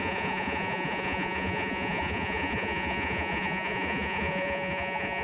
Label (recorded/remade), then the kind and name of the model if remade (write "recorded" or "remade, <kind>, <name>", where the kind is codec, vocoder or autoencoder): remade, vocoder, Vocos